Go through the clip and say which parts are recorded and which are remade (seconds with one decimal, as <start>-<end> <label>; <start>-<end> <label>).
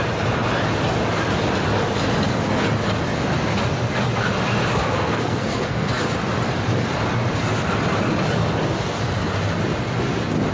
0.0-4.7 recorded; 4.7-6.0 remade; 6.0-10.5 recorded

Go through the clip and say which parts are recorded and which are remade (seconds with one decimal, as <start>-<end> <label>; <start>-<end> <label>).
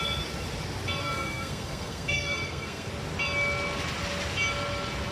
0.0-1.0 recorded; 1.0-2.9 remade; 2.9-5.1 recorded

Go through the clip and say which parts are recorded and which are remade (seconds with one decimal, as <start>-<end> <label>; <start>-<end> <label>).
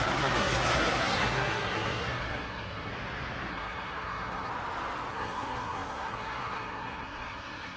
0.0-2.9 remade; 2.9-3.5 recorded; 3.5-4.5 remade; 4.5-5.1 recorded; 5.1-7.8 remade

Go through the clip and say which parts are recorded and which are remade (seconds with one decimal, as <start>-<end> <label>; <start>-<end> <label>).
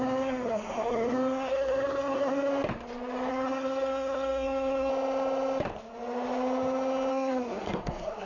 0.0-2.5 remade; 2.5-3.3 recorded; 3.3-4.9 remade; 4.9-7.1 recorded; 7.1-8.3 remade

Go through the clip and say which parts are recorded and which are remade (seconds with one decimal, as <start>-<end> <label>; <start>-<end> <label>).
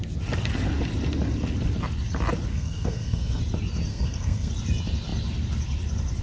0.0-2.5 recorded; 2.5-3.4 remade; 3.4-3.9 recorded; 3.9-4.5 remade; 4.5-6.2 recorded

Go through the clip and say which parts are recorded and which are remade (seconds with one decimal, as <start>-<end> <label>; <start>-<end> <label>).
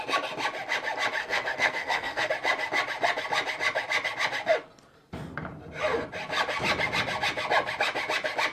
0.0-1.2 recorded; 1.2-2.3 remade; 2.3-8.5 recorded